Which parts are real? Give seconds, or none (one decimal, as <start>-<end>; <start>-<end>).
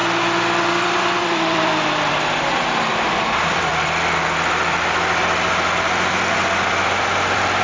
0.0-0.7; 3.7-6.3